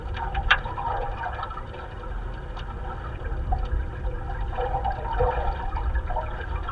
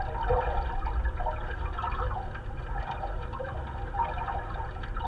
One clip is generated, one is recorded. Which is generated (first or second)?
first